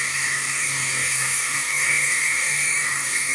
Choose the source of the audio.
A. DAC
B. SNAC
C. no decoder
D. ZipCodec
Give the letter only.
A